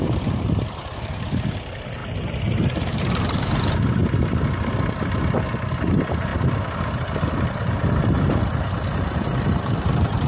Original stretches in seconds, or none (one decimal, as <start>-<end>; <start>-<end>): 2.0-3.0; 4.0-5.7; 6.3-6.9

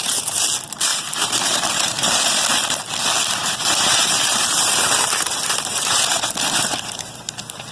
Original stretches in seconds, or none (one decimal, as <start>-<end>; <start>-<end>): 0.0-0.9; 2.4-3.4; 7.2-7.7